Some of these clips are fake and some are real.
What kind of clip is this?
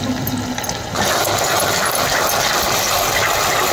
real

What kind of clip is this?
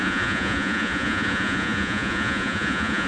fake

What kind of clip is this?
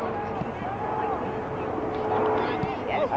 real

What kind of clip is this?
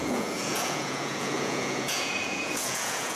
fake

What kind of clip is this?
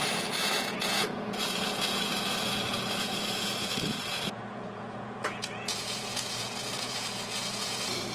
fake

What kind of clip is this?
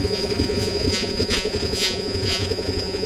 fake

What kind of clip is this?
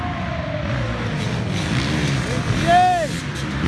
real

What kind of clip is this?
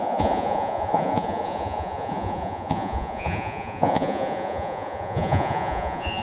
fake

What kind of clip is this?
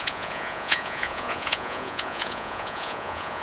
fake